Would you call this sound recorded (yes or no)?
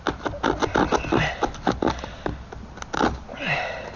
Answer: yes